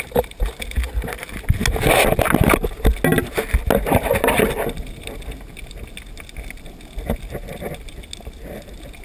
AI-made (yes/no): no